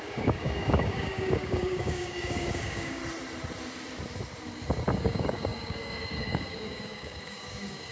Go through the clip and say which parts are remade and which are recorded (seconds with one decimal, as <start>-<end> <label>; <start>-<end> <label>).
0.0-3.0 remade; 3.0-5.0 recorded; 5.0-7.9 remade